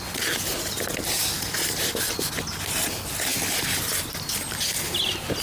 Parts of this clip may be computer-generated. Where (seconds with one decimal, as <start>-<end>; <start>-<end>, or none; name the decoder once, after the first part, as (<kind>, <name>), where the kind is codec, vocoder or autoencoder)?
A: none